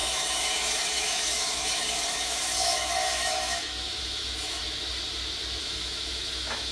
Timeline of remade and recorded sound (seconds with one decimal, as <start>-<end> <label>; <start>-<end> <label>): 0.0-4.6 remade; 4.6-5.6 recorded; 5.6-6.7 remade